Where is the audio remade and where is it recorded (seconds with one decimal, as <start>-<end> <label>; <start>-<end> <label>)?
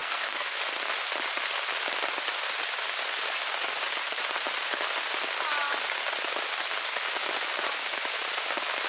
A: 0.0-0.6 remade; 0.6-8.9 recorded